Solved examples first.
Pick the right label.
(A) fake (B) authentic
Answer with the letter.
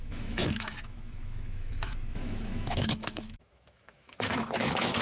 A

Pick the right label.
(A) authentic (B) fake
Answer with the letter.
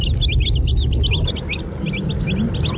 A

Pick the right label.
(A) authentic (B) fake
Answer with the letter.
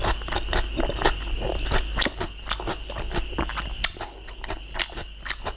A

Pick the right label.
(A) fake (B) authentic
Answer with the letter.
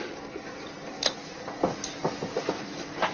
B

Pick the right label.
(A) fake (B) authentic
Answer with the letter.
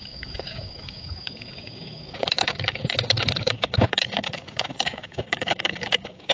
A